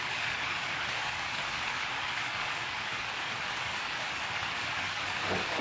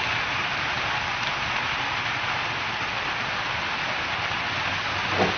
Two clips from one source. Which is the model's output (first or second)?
first